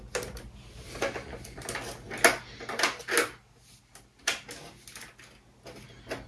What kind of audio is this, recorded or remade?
recorded